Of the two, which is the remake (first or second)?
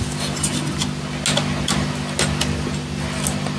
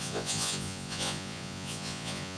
second